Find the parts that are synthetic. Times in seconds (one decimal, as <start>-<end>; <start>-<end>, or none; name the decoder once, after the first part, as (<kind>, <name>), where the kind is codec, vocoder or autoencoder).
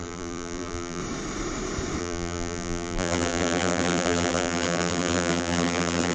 0.0-1.0 (vocoder, BigVGAN v2); 2.0-6.1